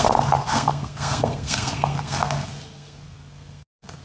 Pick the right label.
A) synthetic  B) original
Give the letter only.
A